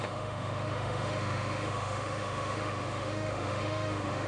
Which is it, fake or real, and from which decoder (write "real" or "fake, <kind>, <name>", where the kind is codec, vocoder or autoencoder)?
fake, autoencoder, DAC-VAE